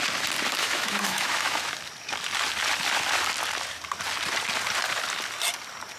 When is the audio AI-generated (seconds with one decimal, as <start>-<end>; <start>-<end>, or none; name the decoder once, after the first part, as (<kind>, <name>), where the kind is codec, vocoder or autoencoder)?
0.6-1.6 (autoencoder, DAC-VAE)